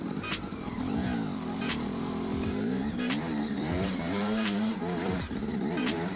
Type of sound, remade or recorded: remade